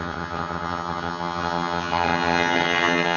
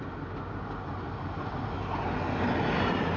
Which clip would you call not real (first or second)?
first